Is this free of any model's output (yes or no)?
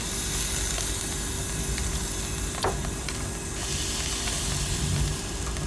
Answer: yes